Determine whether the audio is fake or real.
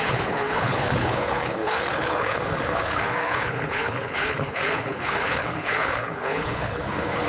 fake